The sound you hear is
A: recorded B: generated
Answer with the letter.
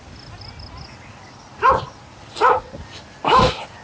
A